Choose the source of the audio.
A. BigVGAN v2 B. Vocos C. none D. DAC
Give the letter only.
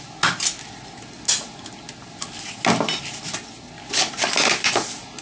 C